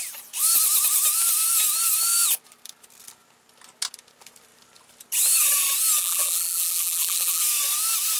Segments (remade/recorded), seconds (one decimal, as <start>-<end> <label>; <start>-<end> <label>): 0.0-6.0 recorded; 6.0-7.4 remade; 7.4-8.2 recorded